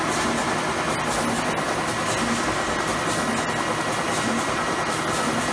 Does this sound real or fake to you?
real